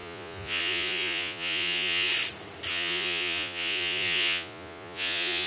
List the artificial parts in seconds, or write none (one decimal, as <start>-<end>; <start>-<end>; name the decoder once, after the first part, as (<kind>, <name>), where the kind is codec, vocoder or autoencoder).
0.0-2.1 (vocoder, Vocos); 2.7-5.5